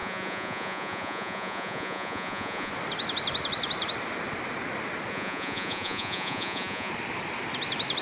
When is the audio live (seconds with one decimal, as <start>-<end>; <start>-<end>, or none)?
2.7-5.1; 6.9-8.0